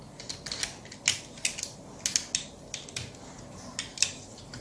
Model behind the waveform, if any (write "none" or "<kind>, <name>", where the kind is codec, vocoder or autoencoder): none